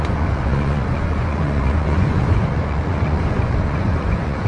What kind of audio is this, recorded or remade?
remade